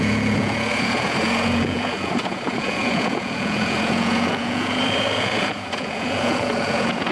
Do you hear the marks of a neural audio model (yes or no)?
yes